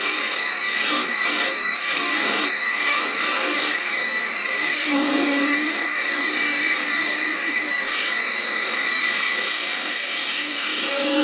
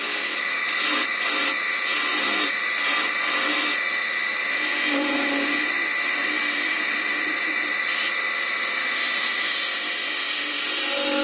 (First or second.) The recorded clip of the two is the second